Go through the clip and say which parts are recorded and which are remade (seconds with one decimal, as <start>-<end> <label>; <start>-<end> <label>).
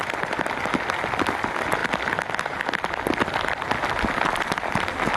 0.0-5.2 recorded